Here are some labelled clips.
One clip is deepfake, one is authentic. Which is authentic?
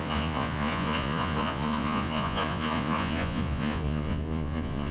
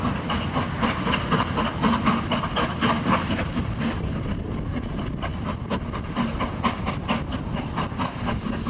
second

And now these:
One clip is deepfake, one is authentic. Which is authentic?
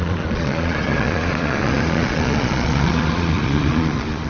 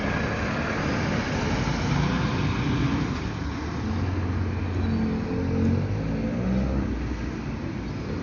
second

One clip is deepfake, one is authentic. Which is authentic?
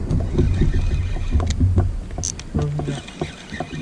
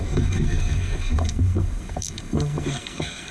first